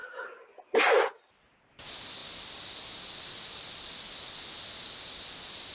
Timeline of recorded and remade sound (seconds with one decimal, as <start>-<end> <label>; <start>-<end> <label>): 0.0-5.7 recorded